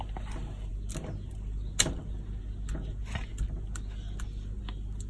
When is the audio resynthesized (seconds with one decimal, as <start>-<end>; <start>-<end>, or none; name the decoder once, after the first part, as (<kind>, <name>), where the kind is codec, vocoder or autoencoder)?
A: none